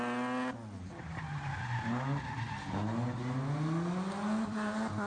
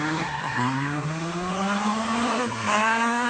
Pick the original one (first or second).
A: first